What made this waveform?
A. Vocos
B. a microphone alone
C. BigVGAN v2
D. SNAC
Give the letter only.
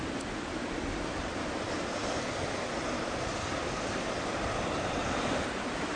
C